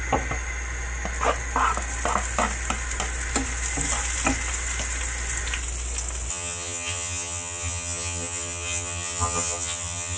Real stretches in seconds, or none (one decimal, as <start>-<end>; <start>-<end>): 0.0-6.3